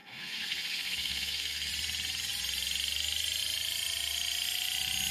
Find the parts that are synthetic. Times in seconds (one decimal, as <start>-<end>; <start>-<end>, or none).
0.0-1.7